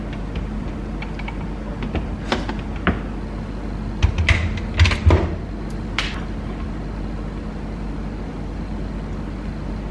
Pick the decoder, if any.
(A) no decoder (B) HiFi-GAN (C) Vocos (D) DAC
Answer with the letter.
A